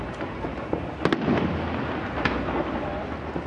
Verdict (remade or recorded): recorded